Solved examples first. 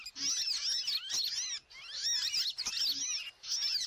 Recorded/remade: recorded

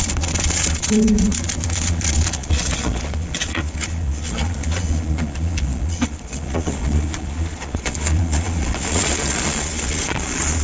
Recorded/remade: remade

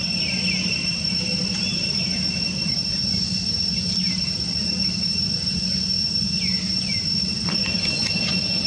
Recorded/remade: recorded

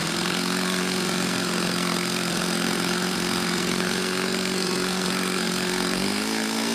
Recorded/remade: remade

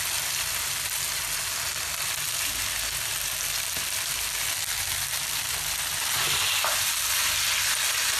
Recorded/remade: recorded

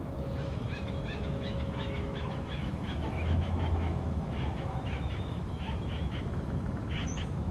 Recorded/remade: remade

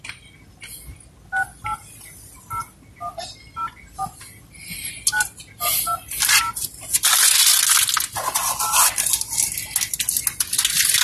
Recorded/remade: recorded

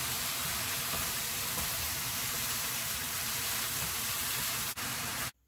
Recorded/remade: remade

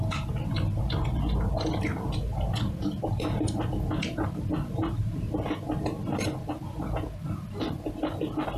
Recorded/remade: recorded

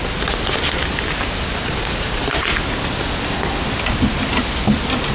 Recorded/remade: recorded